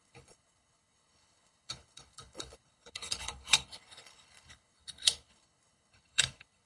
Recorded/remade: remade